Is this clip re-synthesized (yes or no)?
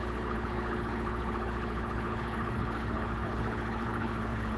yes